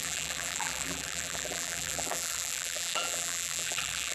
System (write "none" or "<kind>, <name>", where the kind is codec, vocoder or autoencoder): vocoder, BigVGAN v2